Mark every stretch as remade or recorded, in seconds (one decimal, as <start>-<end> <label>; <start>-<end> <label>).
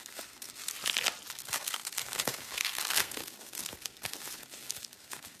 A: 0.0-0.6 remade; 0.6-1.3 recorded; 1.3-5.4 remade